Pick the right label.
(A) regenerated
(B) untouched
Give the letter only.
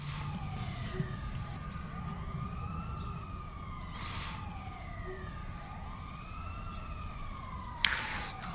B